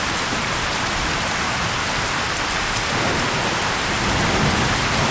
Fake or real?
real